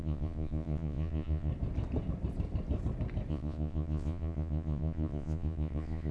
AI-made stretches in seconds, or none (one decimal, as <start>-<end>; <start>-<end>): 0.0-1.5; 3.3-6.1